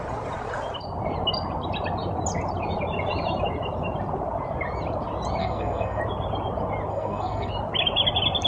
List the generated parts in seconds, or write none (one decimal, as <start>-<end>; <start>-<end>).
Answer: 5.4-6.0; 6.9-7.5